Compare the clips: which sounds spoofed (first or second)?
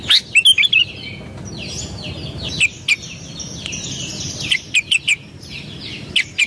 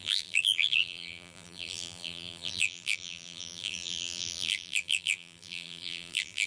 second